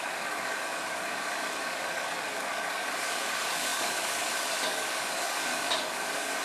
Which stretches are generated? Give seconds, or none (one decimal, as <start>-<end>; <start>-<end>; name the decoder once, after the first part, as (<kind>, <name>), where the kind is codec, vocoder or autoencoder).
0.0-6.4 (codec, DAC)